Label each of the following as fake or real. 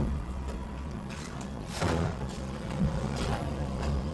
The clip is fake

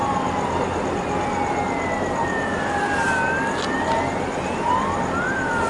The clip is real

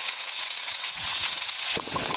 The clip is fake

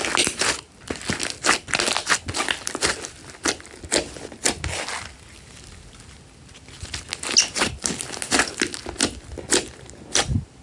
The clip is real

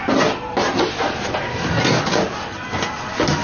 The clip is real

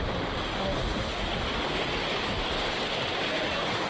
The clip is real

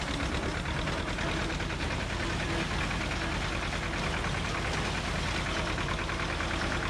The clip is real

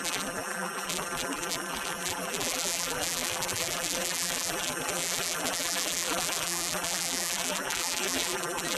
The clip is fake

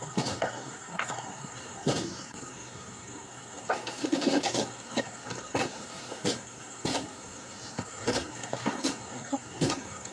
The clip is fake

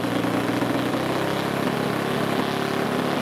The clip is real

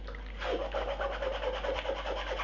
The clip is real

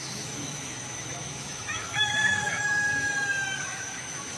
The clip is fake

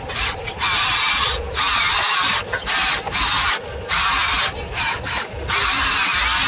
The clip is real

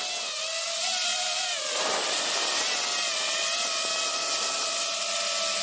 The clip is real